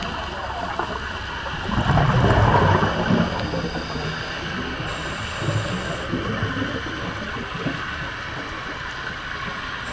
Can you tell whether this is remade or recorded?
recorded